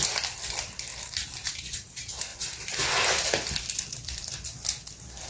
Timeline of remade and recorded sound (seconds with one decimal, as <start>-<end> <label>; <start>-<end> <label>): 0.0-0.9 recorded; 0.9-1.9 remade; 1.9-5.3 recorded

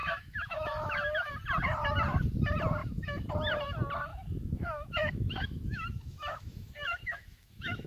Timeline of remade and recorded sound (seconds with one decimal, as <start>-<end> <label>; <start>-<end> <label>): 0.0-1.3 remade; 1.3-2.8 recorded; 2.8-3.3 remade; 3.3-4.1 recorded; 4.1-7.9 remade

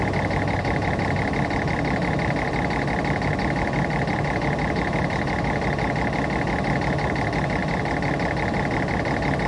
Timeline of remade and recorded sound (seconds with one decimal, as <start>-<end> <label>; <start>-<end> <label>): 0.0-9.5 recorded